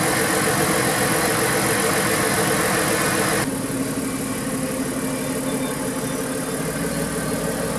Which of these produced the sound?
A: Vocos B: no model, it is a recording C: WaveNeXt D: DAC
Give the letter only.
B